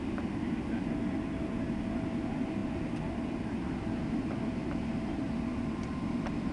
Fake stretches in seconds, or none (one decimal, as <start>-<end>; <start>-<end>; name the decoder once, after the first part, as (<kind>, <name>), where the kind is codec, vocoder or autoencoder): none